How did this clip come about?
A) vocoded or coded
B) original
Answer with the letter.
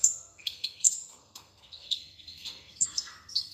A